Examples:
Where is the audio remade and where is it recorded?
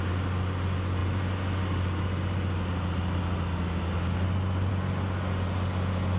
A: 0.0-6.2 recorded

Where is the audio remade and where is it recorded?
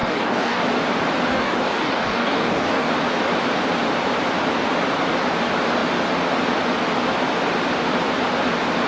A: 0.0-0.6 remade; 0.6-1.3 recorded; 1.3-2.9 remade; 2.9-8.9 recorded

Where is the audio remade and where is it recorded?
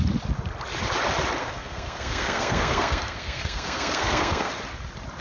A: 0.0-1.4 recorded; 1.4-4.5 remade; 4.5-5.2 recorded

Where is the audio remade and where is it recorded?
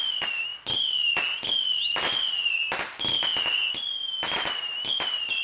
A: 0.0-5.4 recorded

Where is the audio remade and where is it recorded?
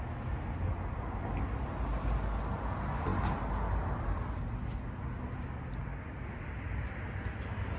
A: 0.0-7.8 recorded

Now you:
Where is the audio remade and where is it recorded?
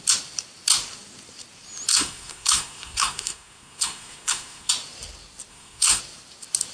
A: 0.0-1.9 recorded; 1.9-4.7 remade; 4.7-5.5 recorded; 5.5-6.0 remade; 6.0-6.7 recorded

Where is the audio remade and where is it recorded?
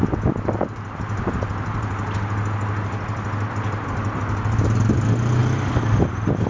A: 0.0-6.5 recorded